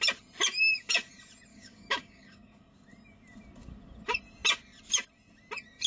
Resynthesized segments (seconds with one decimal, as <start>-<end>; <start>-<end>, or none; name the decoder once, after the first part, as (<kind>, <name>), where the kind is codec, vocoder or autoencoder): 1.5-2.5 (codec, DAC)